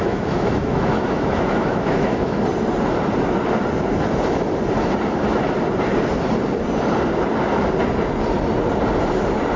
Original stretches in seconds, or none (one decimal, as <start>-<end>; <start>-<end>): 2.4-9.6